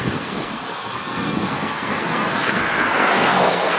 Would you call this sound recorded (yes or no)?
no